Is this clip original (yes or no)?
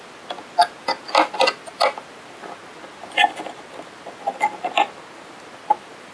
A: yes